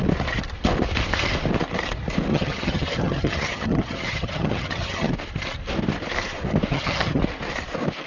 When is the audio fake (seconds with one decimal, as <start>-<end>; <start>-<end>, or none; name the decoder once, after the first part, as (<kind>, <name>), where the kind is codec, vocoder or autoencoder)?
2.3-5.1 (vocoder, HiFi-GAN); 6.7-7.2